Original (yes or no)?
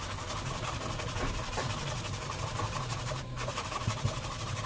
no